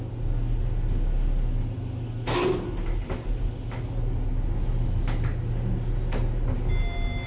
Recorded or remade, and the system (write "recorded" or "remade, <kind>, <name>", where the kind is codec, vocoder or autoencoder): recorded